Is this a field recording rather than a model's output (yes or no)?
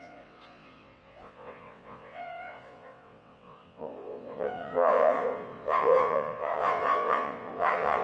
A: no